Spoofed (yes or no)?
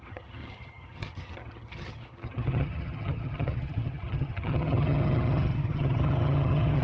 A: yes